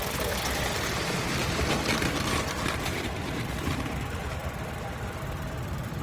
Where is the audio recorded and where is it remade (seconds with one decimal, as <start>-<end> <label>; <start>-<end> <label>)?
0.0-1.4 remade; 1.4-2.8 recorded; 2.8-6.0 remade